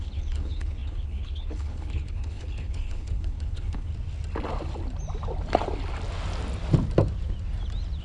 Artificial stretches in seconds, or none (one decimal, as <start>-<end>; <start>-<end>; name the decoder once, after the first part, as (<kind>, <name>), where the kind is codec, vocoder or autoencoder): 0.0-3.9 (codec, HILCodec)